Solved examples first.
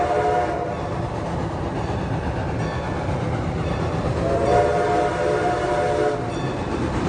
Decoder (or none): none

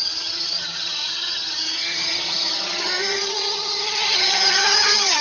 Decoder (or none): vocoder, HiFi-GAN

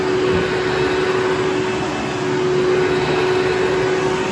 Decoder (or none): none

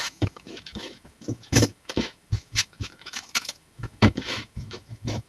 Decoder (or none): autoencoder, DAC-VAE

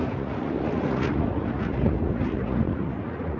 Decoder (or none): vocoder, Vocos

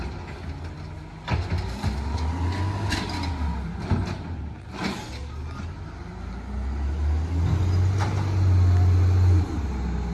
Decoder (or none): none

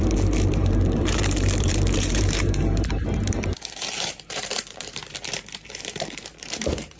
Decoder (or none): vocoder, BigVGAN v2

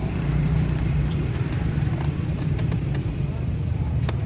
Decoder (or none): vocoder, BigVGAN v2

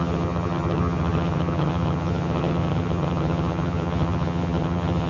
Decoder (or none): vocoder, HiFi-GAN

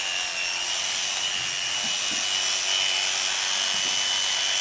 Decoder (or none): none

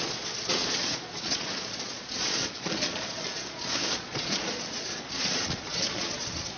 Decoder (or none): vocoder, Vocos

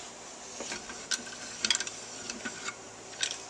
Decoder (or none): none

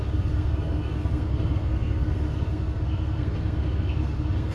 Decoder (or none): codec, SNAC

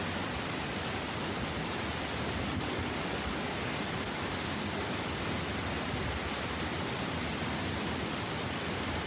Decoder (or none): none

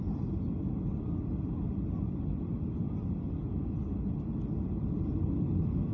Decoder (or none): none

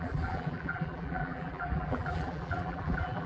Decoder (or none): vocoder, BigVGAN v2